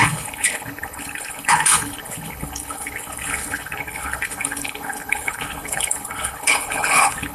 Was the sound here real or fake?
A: fake